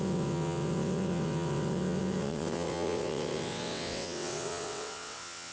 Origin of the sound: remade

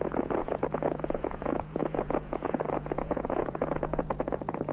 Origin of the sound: remade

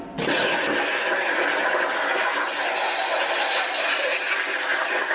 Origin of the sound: recorded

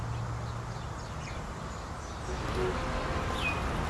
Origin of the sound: recorded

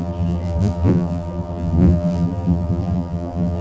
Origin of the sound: remade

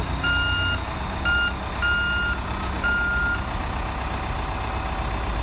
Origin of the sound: recorded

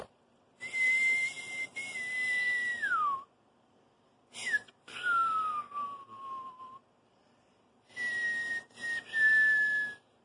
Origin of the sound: recorded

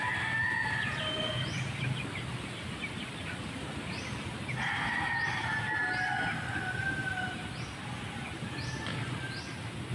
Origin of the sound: recorded